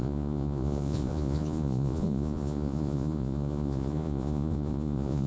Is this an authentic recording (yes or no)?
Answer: no